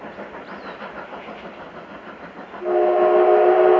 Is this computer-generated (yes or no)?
no